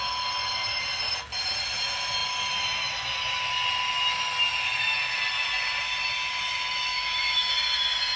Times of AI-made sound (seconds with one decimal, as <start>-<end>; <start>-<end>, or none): 6.9-7.5